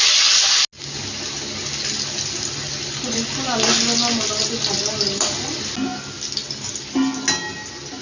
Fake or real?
real